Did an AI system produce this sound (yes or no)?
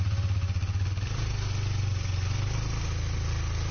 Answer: no